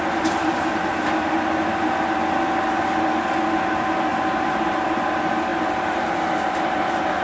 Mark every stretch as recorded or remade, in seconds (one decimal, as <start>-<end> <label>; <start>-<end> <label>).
0.0-4.1 recorded; 4.1-4.7 remade; 4.7-7.2 recorded